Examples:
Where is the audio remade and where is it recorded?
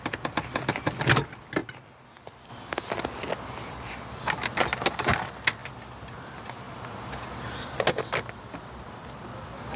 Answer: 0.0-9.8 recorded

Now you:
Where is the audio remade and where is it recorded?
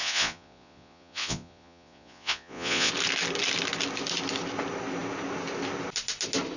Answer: 0.0-2.9 remade; 2.9-6.6 recorded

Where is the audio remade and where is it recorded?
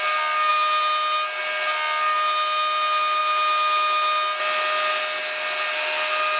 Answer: 0.0-6.4 recorded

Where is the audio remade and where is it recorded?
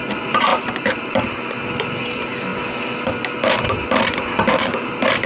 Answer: 0.0-0.5 recorded; 0.5-1.6 remade; 1.6-5.3 recorded